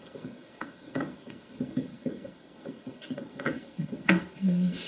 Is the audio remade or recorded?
remade